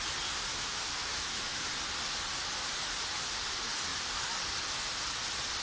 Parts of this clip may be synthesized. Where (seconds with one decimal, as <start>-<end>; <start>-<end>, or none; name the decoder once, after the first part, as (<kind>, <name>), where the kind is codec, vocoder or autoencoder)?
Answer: 0.5-1.6 (autoencoder, DAC-VAE)